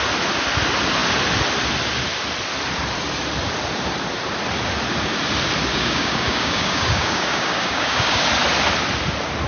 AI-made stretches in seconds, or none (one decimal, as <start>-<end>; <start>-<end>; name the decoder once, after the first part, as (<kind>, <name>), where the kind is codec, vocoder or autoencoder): 5.7-8.2 (codec, DAC)